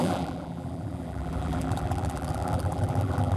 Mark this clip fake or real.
fake